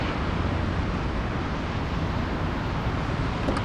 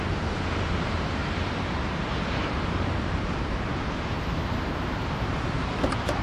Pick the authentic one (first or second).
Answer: first